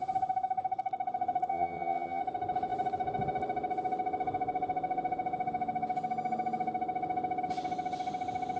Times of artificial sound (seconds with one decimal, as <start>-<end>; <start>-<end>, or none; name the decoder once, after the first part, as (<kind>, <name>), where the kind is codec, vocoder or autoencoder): 1.5-2.2 (vocoder, HiFi-GAN)